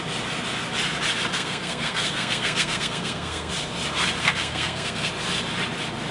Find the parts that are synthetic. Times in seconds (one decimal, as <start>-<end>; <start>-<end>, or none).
1.3-3.5; 4.2-5.1